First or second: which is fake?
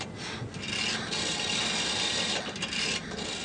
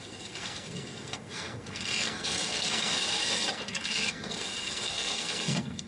second